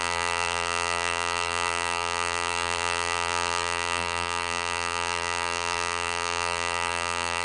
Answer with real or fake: fake